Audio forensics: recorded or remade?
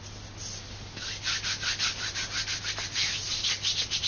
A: recorded